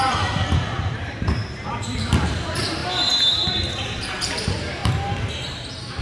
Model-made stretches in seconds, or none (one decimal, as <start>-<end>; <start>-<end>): 0.0-2.8; 3.5-4.8; 5.3-6.0